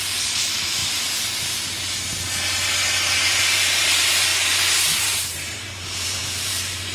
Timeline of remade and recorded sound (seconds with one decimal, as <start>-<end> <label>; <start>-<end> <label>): 0.0-0.8 remade; 0.8-3.2 recorded; 3.2-6.9 remade